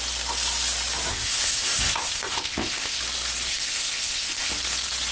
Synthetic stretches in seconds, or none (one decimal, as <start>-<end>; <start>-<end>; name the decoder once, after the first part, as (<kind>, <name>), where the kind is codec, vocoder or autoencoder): 1.1-3.0 (codec, ZipCodec); 3.5-4.5